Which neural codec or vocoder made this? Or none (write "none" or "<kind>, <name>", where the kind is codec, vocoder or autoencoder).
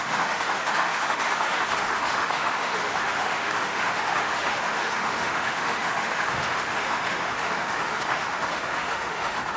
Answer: autoencoder, DAC-VAE